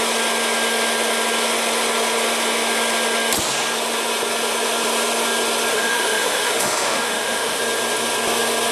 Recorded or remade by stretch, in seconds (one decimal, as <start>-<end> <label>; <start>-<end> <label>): 0.0-5.7 recorded; 5.7-7.6 remade; 7.6-8.7 recorded